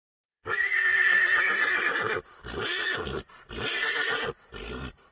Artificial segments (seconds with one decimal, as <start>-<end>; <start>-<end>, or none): 0.0-0.8